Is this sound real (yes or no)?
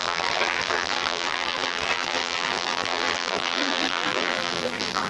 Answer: no